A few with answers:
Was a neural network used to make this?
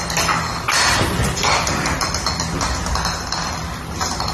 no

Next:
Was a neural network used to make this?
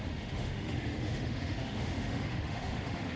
yes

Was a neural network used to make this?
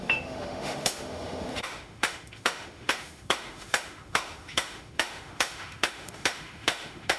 yes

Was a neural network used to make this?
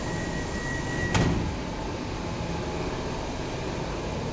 no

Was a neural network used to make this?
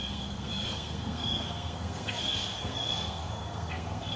yes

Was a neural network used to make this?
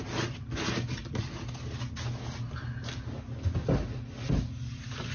no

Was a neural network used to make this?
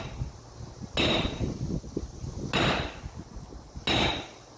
no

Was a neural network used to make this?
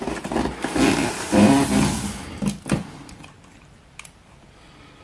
no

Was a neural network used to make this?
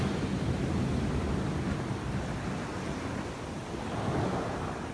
no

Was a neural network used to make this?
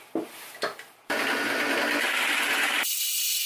no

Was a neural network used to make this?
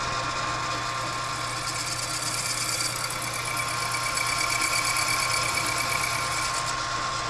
no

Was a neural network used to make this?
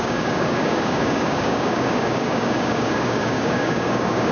yes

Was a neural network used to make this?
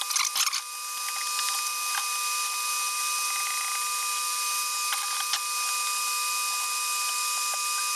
no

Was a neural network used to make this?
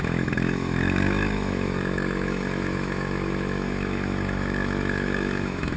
yes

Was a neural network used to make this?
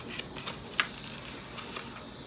no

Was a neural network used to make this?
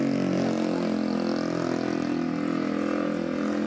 no